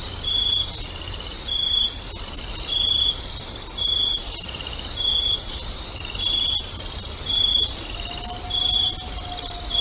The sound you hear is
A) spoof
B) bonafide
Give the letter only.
B